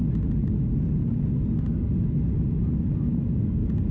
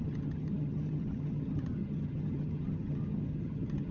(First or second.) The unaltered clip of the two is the first